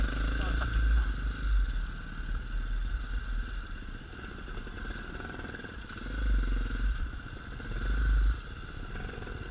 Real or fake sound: real